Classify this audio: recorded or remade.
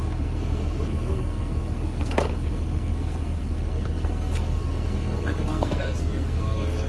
remade